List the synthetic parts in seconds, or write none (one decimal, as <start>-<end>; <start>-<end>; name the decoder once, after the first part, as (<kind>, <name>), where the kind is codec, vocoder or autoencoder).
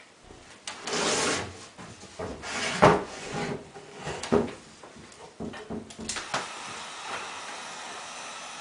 2.2-4.5 (vocoder, Vocos)